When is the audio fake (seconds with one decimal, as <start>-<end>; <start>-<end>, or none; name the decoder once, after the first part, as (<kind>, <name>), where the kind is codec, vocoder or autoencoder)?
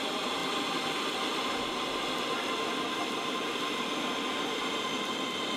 none